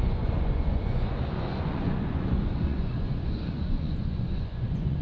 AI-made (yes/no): yes